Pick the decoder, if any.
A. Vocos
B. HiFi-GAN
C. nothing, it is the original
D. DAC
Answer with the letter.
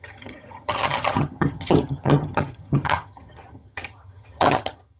B